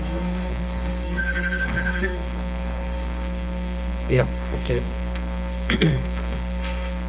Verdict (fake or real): fake